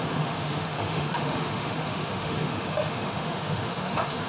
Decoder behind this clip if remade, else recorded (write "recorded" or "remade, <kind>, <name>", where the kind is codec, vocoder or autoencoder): remade, autoencoder, DAC-VAE